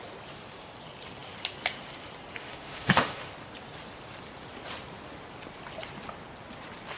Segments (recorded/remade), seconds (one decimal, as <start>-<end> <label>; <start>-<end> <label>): 0.0-2.4 recorded; 2.4-3.3 remade; 3.3-7.0 recorded